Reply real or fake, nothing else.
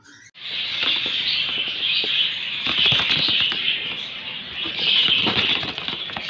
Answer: real